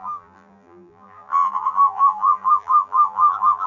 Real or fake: fake